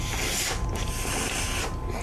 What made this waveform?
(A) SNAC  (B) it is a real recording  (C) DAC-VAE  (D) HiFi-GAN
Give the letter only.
B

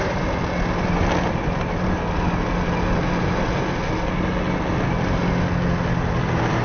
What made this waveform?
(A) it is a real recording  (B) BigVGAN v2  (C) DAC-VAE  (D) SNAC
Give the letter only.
A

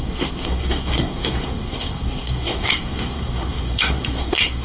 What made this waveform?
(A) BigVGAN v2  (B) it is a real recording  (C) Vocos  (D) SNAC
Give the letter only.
D